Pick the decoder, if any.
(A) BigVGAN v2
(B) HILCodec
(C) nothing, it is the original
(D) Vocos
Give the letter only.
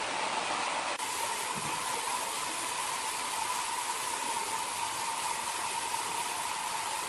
C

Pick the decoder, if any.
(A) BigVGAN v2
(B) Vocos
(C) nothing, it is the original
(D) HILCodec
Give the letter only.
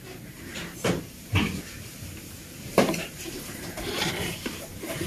A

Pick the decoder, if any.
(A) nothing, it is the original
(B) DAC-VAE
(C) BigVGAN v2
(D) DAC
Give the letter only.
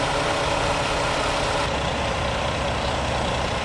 A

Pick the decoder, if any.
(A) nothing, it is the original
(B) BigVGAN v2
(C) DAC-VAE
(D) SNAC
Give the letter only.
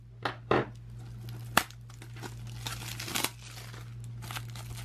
A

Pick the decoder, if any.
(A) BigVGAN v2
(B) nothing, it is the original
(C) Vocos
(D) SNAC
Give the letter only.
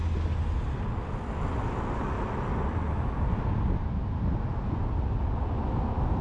B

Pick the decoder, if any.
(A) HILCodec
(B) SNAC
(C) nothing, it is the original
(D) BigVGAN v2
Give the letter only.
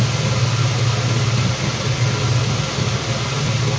C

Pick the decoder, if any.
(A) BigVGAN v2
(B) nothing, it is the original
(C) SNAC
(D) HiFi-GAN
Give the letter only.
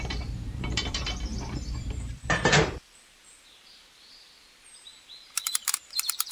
A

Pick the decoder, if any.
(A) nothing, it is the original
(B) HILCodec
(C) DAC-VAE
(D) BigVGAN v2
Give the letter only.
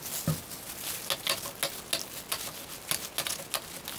A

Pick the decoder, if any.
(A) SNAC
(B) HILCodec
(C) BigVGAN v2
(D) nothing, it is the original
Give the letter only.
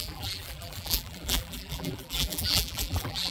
C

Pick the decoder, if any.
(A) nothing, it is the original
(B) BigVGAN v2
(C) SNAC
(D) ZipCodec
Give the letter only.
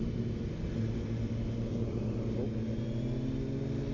A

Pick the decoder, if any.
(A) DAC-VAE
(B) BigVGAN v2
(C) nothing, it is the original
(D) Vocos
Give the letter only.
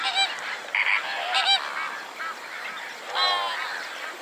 B